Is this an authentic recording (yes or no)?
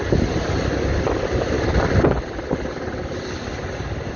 yes